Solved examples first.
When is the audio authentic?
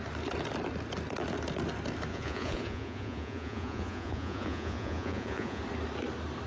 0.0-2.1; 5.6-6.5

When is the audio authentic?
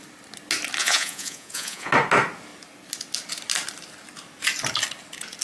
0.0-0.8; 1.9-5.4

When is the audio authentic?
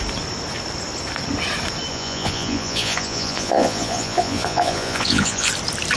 0.0-1.9; 5.5-6.0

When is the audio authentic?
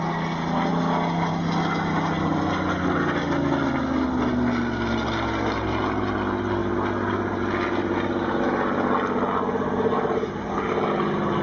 0.0-11.4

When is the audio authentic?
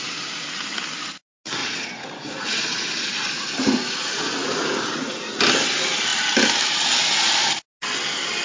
0.0-1.6; 5.3-8.4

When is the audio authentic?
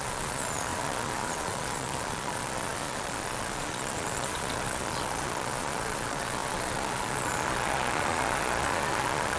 none